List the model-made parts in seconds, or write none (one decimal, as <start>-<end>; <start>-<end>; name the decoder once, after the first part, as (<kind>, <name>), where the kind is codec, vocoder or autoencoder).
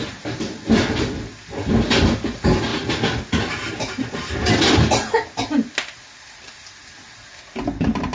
none